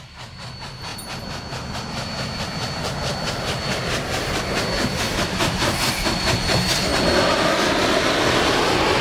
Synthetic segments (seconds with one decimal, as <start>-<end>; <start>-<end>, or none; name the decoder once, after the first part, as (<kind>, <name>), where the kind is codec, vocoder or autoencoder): none